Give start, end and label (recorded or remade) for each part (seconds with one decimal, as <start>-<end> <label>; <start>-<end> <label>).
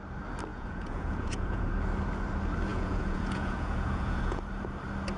0.0-0.5 recorded; 0.5-1.7 remade; 1.7-2.7 recorded; 2.7-4.4 remade; 4.4-5.2 recorded